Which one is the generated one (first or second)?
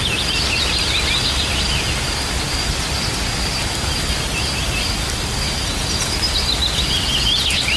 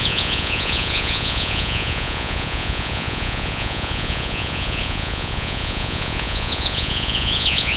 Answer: second